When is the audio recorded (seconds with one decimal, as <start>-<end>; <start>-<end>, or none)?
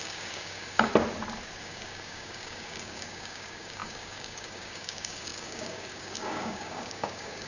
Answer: 0.9-1.6